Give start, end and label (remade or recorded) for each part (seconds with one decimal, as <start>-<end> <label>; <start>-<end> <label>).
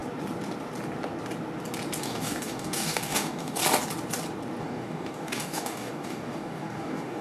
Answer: 0.0-2.0 recorded; 2.0-3.6 remade; 3.6-4.6 recorded; 4.6-7.2 remade